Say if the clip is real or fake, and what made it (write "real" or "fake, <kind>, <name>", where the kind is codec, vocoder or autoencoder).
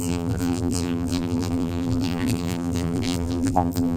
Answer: fake, vocoder, BigVGAN v2